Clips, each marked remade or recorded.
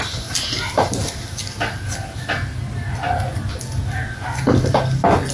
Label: recorded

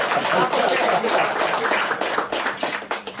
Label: remade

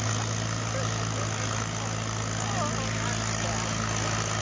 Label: recorded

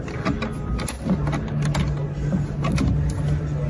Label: recorded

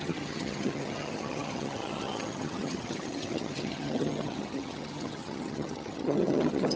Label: remade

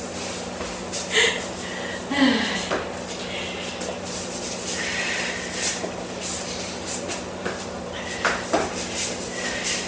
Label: recorded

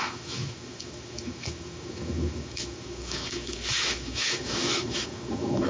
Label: remade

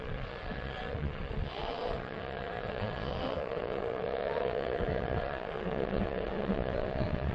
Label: remade